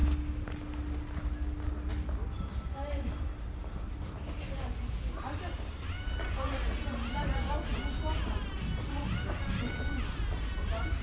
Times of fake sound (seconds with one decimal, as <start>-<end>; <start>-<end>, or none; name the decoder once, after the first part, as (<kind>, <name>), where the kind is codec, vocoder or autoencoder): none